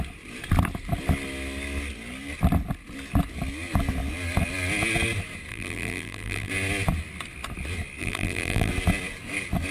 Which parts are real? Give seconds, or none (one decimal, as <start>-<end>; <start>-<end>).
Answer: 0.0-5.5; 6.5-8.0; 8.7-9.7